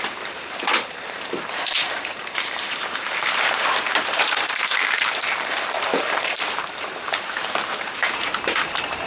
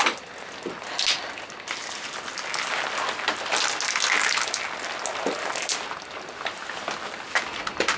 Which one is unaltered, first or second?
second